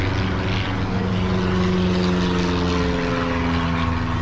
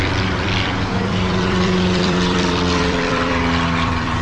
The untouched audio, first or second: first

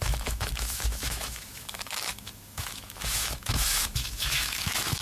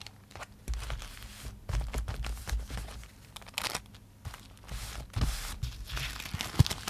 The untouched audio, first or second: second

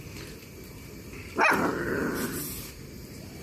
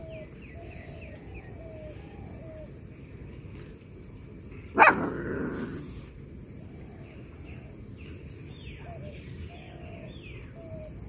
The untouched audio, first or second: second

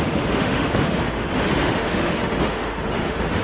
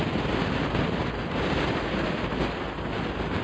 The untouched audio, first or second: second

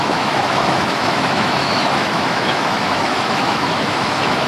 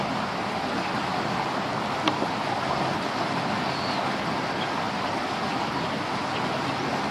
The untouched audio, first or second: second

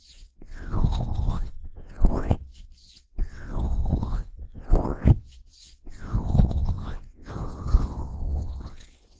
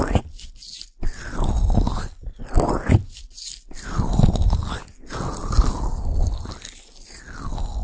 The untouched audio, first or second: second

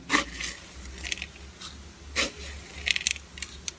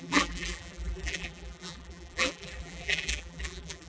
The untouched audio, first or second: first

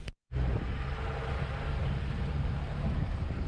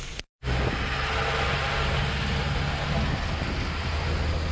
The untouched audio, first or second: second